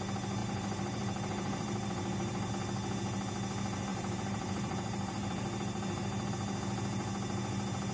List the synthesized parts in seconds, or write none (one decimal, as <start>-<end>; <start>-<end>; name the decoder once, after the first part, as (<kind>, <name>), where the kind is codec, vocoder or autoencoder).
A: 0.4-2.5 (vocoder, BigVGAN v2); 3.9-6.3